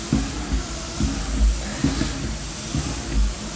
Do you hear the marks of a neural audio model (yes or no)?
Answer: no